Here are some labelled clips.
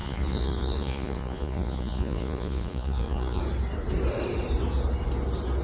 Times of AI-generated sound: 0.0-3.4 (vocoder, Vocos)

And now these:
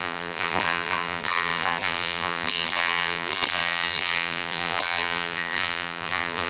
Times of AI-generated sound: 0.0-6.5 (vocoder, BigVGAN v2)

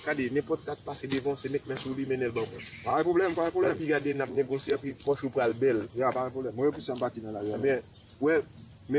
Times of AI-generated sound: 2.9-4.9 (vocoder, Vocos)